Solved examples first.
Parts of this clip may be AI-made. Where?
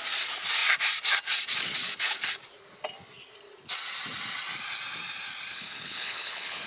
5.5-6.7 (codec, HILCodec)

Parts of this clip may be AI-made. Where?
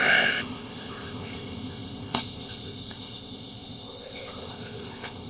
0.0-5.3 (codec, ZipCodec)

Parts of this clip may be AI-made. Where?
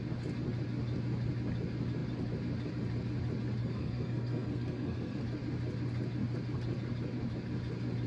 3.6-5.2 (codec, SNAC)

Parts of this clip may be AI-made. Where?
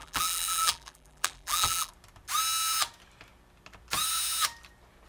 0.0-1.9 (vocoder, BigVGAN v2)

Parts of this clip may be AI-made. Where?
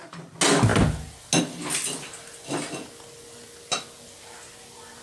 none